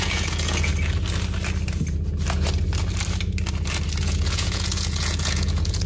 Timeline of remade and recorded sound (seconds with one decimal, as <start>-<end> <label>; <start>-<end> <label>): 0.0-0.7 remade; 0.7-4.0 recorded; 4.0-5.9 remade